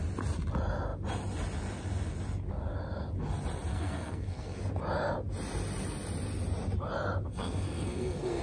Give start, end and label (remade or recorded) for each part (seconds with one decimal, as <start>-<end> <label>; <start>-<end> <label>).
0.0-3.7 recorded; 3.7-4.6 remade; 4.6-7.3 recorded; 7.3-8.4 remade